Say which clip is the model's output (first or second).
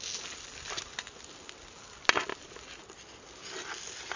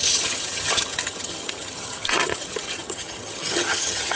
second